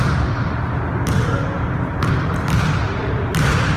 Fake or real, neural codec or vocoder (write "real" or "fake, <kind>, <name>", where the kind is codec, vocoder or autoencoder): fake, vocoder, BigVGAN v2